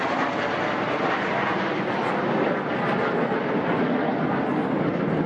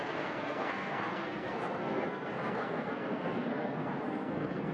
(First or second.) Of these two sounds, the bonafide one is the first